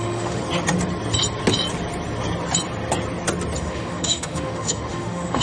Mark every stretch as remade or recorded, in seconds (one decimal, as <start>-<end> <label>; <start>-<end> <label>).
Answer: 0.0-0.4 remade; 0.4-3.6 recorded; 3.6-5.4 remade